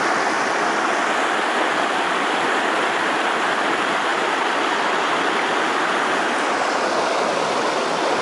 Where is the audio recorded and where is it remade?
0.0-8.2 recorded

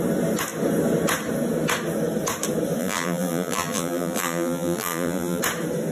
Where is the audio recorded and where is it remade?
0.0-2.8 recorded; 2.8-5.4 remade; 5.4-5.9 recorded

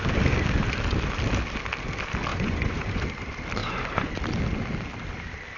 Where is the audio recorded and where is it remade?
0.0-2.3 recorded; 2.3-3.0 remade; 3.0-3.6 recorded; 3.6-4.2 remade; 4.2-5.6 recorded

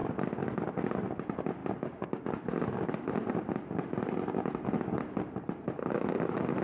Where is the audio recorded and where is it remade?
0.0-6.6 recorded